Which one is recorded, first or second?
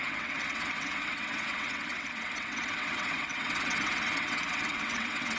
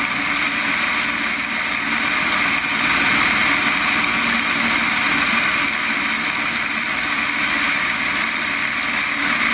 second